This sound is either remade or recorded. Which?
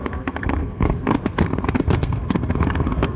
remade